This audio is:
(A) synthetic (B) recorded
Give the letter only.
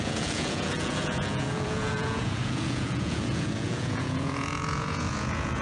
A